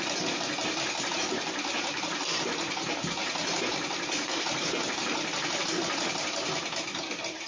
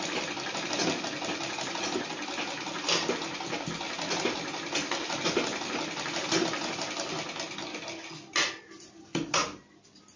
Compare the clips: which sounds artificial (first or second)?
first